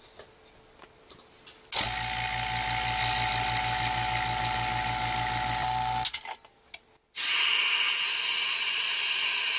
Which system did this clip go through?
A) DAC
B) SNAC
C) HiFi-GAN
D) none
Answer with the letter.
D